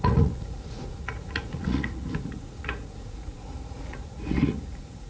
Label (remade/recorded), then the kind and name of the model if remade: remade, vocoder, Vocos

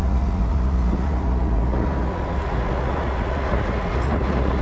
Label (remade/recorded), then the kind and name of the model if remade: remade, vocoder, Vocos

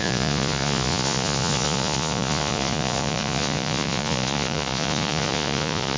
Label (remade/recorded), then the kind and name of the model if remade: remade, vocoder, Vocos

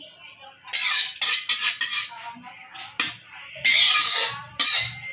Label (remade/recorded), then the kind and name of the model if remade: recorded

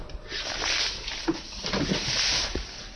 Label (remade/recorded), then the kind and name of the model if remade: recorded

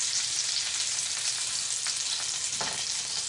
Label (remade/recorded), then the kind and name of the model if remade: recorded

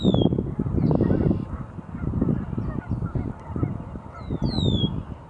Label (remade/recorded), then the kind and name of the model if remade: recorded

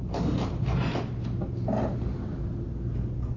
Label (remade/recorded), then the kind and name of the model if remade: recorded